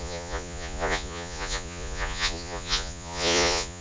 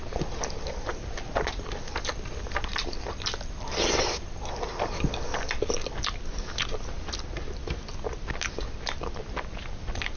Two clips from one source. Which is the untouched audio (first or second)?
second